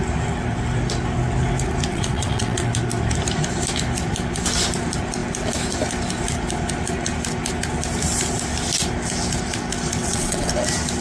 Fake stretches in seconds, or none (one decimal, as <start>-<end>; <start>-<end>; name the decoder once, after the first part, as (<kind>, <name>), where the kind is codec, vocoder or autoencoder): 1.9-2.7 (vocoder, WaveNeXt); 10.0-10.5